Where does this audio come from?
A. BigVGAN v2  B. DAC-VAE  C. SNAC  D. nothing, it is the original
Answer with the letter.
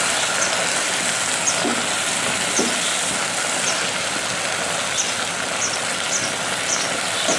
D